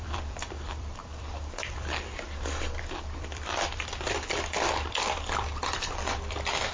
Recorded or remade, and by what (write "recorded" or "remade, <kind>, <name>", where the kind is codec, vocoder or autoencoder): remade, vocoder, BigVGAN v2